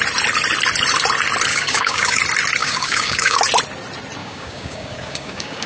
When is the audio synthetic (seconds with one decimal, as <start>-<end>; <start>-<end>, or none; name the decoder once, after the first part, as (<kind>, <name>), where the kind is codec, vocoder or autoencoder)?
1.5-2.2 (codec, DAC); 2.6-3.4; 4.2-5.7